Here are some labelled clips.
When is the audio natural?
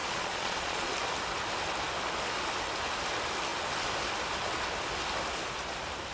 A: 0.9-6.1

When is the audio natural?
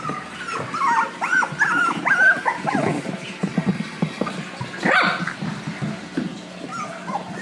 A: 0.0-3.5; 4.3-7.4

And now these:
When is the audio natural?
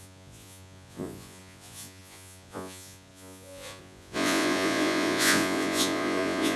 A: none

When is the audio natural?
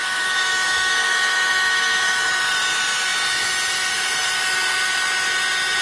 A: 2.3-5.8